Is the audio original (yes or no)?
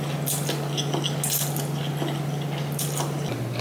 yes